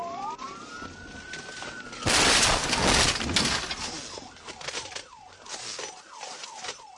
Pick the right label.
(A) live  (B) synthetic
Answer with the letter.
A